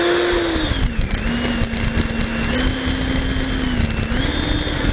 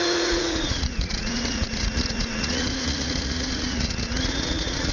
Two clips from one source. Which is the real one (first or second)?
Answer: first